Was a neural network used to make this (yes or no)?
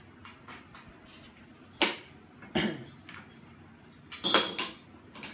no